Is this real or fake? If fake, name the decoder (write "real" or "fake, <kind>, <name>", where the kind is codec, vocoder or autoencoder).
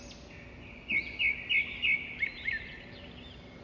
real